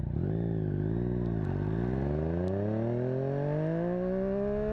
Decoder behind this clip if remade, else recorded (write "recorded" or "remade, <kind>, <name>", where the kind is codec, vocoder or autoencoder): recorded